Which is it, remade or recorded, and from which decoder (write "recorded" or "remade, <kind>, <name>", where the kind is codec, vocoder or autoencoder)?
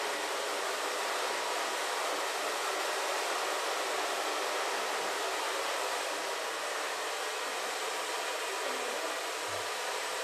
recorded